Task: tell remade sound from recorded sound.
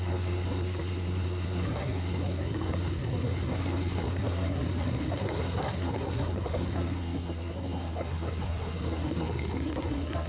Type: remade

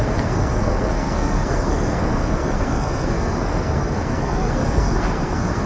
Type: remade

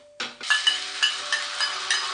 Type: recorded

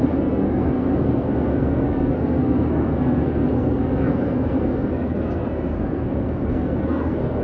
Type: remade